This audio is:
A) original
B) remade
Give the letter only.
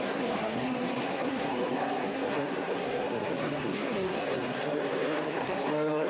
B